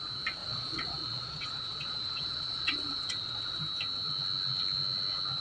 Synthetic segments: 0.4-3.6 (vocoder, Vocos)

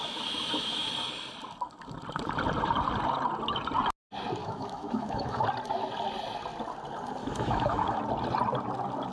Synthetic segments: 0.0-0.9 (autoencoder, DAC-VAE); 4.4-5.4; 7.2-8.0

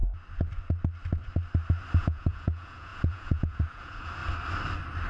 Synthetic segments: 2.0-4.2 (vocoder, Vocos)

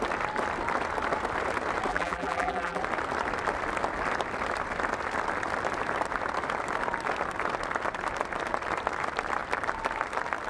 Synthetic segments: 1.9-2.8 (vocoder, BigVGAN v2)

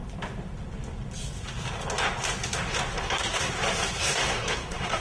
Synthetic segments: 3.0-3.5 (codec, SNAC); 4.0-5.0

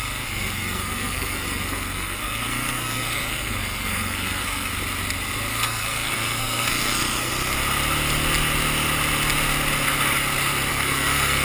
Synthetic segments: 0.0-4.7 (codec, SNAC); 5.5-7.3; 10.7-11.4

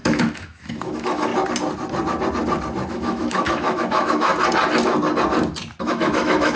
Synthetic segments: 0.0-1.3 (autoencoder, DAC-VAE); 2.9-4.3; 5.8-6.6